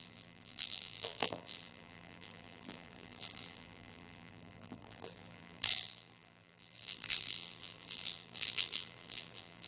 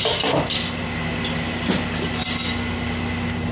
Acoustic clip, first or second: second